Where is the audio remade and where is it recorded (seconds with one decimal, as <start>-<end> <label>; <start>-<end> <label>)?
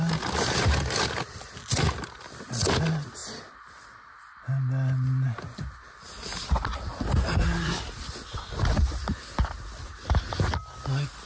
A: 0.0-11.3 recorded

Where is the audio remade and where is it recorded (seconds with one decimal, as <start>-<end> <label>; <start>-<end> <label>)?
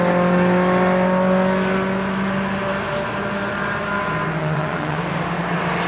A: 0.0-4.4 recorded; 4.4-5.0 remade; 5.0-5.9 recorded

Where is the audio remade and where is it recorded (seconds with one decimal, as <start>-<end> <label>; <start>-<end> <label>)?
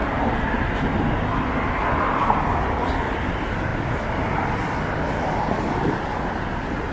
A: 0.0-6.9 recorded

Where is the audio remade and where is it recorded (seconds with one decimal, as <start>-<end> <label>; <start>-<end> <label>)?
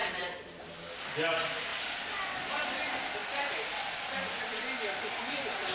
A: 0.0-5.7 recorded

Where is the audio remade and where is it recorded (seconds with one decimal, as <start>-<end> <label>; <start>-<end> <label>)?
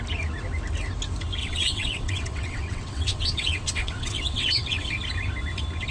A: 0.0-1.4 recorded; 1.4-4.9 remade; 4.9-5.9 recorded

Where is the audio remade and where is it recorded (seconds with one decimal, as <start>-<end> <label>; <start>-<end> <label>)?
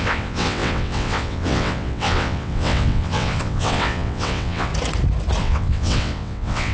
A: 0.0-4.7 remade; 4.7-5.4 recorded; 5.4-6.7 remade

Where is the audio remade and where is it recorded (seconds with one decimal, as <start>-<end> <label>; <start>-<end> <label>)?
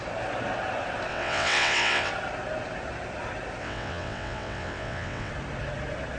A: 0.0-1.1 recorded; 1.1-2.1 remade; 2.1-3.6 recorded; 3.6-5.3 remade; 5.3-6.2 recorded